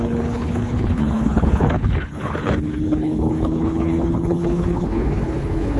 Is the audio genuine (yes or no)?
no